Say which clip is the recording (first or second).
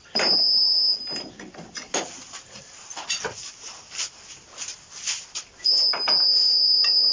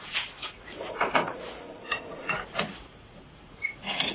first